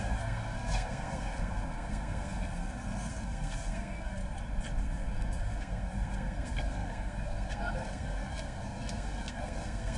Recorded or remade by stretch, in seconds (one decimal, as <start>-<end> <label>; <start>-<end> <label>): 0.0-4.2 remade; 4.2-4.8 recorded; 4.8-10.0 remade